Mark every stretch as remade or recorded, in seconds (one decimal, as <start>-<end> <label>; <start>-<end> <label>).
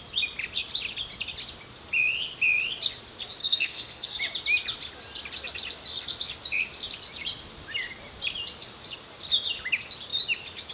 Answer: 0.0-3.4 recorded; 3.4-4.2 remade; 4.2-10.7 recorded